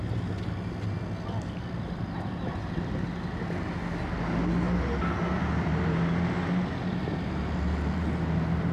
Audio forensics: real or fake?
real